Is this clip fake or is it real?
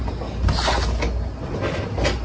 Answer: real